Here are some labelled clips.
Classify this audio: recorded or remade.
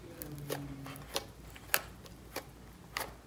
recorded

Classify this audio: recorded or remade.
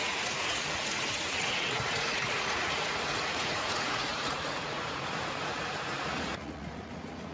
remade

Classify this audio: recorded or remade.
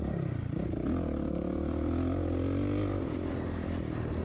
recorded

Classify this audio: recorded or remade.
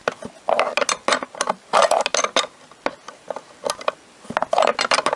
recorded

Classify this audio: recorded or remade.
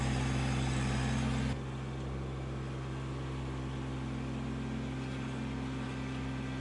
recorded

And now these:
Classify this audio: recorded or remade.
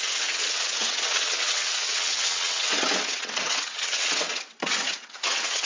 remade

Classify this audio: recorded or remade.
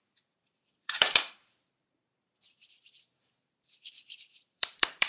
remade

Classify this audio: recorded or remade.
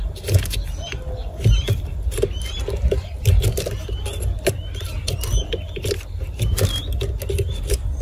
recorded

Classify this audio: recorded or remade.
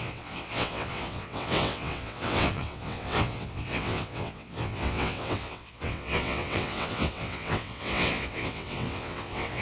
remade